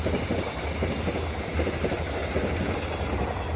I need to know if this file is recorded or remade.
recorded